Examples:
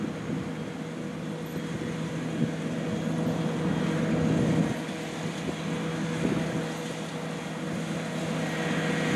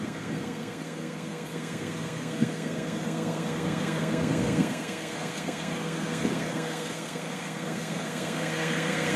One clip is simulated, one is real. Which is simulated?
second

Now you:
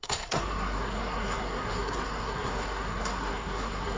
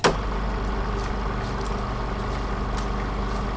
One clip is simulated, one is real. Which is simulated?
first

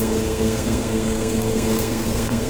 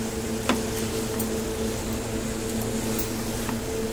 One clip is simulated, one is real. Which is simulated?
first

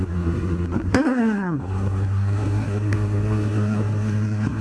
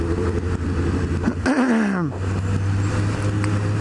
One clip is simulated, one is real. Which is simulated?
first